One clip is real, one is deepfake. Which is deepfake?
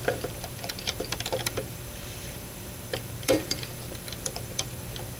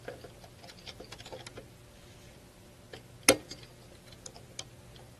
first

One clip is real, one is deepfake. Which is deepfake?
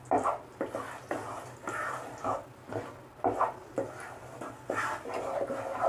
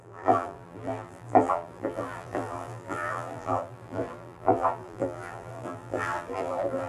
second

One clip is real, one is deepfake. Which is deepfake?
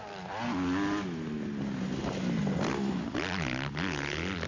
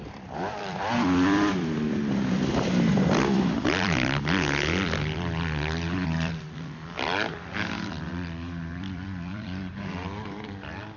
second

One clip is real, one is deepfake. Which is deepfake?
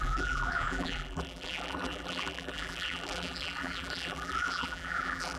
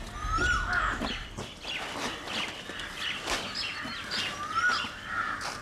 first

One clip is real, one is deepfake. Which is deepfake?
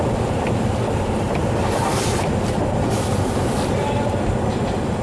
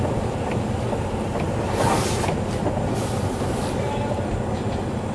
first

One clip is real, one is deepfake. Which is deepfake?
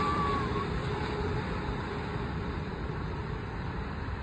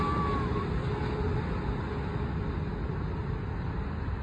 first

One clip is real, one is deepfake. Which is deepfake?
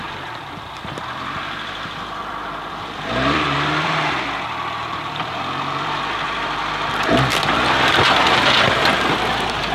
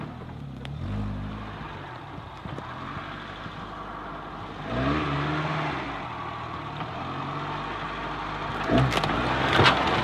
first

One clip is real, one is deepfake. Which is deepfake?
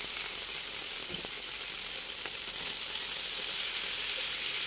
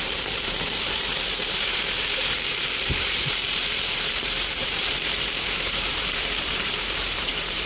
second